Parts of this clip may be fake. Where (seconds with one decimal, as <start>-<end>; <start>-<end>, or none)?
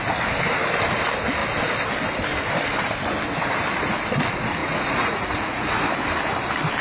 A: 4.6-5.9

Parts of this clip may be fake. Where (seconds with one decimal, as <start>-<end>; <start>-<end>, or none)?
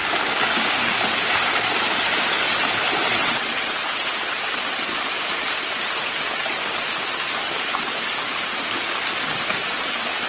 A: 3.2-4.4